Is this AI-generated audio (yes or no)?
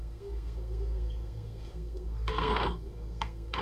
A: yes